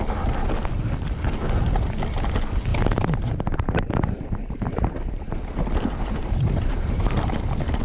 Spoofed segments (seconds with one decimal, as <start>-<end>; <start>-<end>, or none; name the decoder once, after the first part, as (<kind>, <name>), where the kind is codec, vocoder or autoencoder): 2.7-7.3 (vocoder, BigVGAN v2)